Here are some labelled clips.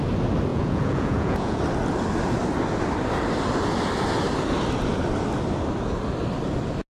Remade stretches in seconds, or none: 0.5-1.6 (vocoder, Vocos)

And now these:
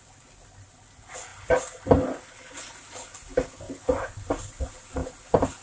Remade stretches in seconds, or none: none

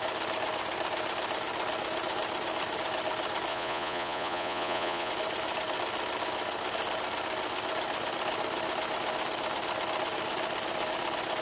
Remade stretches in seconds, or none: 3.5-5.1 (vocoder, Vocos)

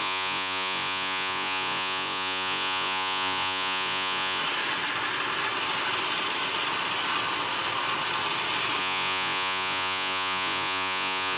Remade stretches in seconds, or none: 0.0-4.4 (vocoder, Vocos); 8.8-11.4